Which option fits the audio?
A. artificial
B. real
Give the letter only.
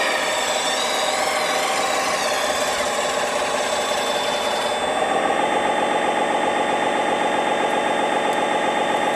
B